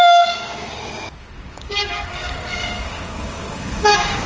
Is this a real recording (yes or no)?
no